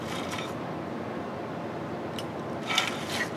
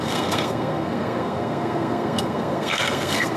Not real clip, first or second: second